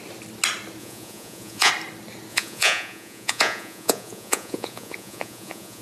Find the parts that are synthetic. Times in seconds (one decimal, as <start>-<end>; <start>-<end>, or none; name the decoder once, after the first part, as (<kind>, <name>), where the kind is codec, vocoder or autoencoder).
0.8-1.7 (vocoder, Vocos); 2.3-5.8

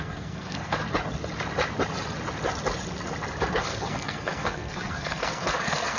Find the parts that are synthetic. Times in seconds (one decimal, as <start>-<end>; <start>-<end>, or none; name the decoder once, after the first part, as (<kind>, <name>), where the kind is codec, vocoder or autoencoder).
0.0-0.8 (codec, SNAC); 3.5-6.0

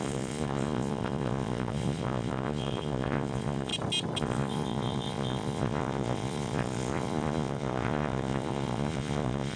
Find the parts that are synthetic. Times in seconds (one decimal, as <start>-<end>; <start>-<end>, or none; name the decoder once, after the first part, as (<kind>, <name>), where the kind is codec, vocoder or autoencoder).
0.0-3.7 (vocoder, Vocos); 4.2-9.6

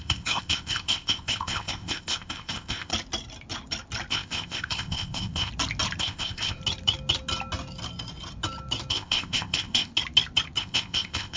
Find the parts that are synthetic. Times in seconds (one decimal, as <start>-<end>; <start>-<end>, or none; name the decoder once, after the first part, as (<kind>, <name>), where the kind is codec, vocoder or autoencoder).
0.0-2.9 (codec, ZipCodec); 4.1-5.5; 6.0-6.6; 8.9-9.9; 10.6-11.4

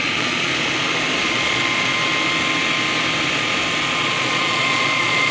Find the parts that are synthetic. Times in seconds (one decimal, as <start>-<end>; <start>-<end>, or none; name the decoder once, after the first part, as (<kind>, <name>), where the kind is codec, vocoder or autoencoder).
0.0-0.5 (vocoder, Vocos); 1.2-2.0; 3.9-5.3

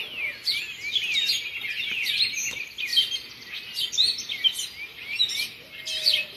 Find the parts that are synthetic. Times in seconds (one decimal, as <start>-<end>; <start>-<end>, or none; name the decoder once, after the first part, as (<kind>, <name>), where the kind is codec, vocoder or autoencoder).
none

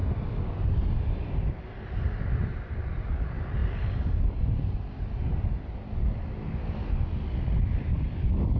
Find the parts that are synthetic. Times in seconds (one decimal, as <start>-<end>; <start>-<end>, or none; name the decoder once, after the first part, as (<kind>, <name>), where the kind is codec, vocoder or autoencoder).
none

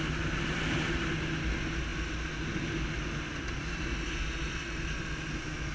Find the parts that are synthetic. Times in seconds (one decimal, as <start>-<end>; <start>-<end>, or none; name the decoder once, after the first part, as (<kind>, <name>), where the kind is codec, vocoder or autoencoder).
none